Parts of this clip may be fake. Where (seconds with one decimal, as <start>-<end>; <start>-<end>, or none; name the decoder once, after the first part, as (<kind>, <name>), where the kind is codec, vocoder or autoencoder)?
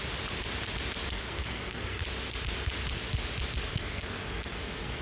1.1-2.0 (codec, SNAC); 3.7-5.0